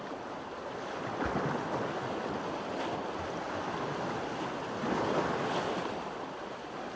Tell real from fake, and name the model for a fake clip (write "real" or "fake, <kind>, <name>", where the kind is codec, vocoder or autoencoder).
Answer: real